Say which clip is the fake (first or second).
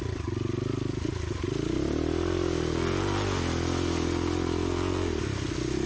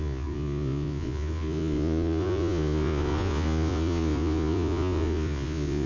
second